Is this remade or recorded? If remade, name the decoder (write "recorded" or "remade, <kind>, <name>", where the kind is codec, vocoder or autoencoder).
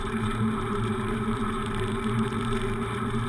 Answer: remade, vocoder, BigVGAN v2